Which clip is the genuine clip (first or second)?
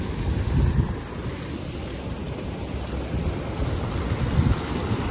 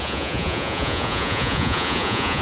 first